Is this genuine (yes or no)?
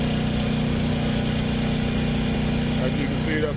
yes